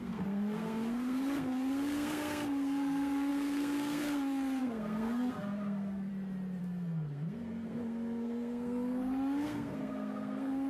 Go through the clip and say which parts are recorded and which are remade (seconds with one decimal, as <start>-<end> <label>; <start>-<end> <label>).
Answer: 0.0-6.1 remade; 6.1-6.6 recorded; 6.6-10.7 remade